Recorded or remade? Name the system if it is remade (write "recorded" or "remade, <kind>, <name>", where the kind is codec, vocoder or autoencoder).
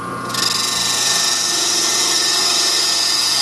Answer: remade, vocoder, Vocos